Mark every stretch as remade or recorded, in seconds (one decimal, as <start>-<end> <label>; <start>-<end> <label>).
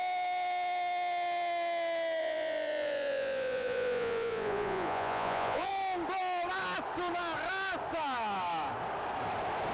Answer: 0.0-2.2 recorded; 2.2-5.7 remade; 5.7-9.7 recorded